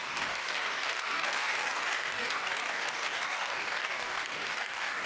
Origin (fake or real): fake